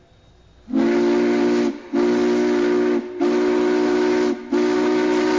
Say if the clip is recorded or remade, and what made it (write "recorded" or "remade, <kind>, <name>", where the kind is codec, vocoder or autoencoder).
recorded